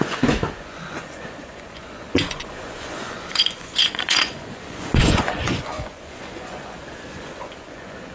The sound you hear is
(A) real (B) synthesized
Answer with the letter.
B